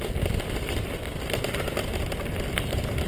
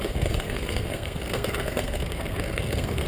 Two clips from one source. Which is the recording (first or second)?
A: first